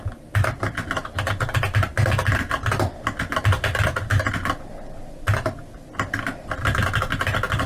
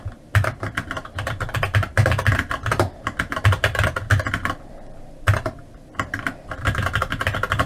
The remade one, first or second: second